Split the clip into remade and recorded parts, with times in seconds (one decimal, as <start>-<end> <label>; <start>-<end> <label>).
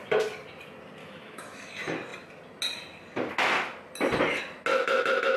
0.0-1.0 recorded; 1.0-1.7 remade; 1.7-4.7 recorded; 4.7-5.4 remade